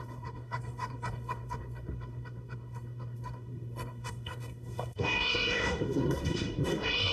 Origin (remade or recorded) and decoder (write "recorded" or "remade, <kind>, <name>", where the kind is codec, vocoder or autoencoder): remade, codec, SNAC